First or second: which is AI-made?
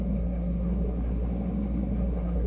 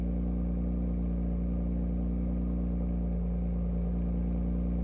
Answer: first